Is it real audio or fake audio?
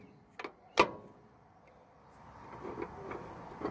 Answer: real